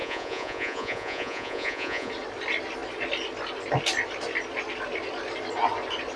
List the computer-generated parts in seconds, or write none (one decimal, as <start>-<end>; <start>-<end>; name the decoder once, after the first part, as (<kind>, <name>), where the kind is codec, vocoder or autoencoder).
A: 0.0-2.1 (vocoder, Vocos)